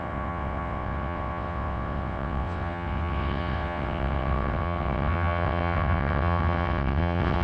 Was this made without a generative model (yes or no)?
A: no